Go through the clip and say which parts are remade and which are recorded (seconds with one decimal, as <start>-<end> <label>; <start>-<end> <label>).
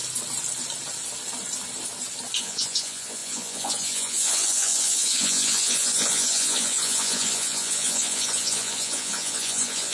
0.0-2.4 recorded; 2.4-9.9 remade